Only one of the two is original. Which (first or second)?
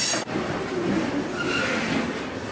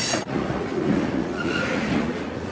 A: first